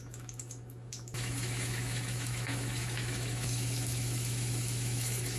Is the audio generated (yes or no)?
yes